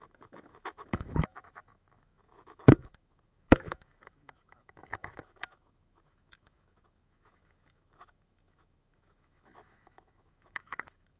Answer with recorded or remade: remade